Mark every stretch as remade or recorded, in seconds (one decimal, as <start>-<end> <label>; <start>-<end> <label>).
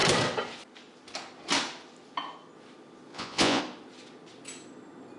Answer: 0.0-3.1 recorded; 3.1-3.6 remade; 3.6-5.2 recorded